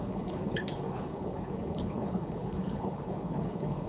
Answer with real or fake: fake